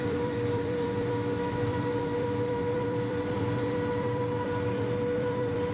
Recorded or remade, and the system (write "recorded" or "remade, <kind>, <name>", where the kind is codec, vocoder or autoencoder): remade, vocoder, BigVGAN v2